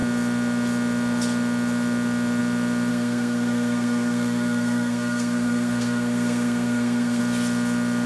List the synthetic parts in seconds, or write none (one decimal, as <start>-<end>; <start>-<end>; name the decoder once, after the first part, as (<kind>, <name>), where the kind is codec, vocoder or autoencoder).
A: 2.9-7.2 (codec, SNAC)